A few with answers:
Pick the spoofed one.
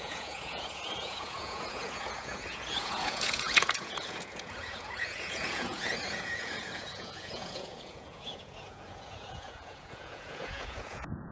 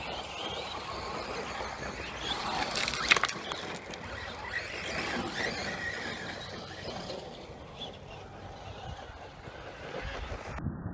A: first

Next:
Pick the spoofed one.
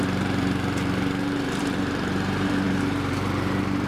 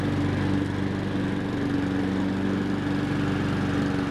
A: first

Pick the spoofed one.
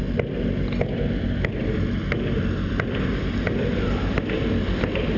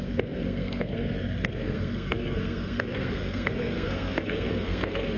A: second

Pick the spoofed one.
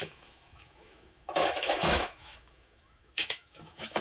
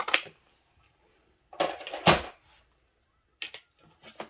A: first